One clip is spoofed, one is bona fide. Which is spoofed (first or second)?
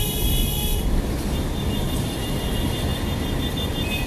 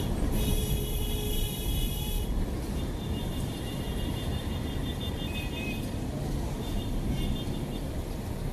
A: second